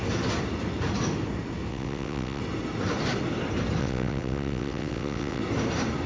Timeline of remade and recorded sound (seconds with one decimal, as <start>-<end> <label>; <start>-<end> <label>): 0.0-1.7 recorded; 1.7-2.4 remade; 2.4-3.8 recorded; 3.8-5.4 remade; 5.4-6.1 recorded